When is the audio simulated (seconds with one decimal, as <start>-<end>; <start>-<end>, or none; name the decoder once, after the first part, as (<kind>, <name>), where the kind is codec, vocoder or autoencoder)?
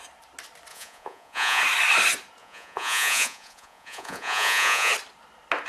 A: 0.7-1.6 (vocoder, Vocos); 2.4-4.9